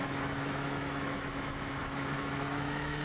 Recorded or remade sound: remade